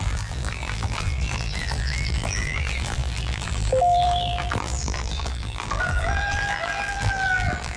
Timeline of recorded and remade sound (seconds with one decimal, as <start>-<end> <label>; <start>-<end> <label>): 0.0-7.8 remade